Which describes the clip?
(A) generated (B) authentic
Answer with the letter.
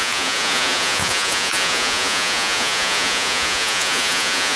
A